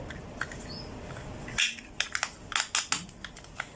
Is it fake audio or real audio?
real